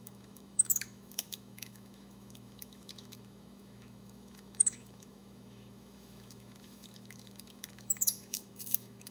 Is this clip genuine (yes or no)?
no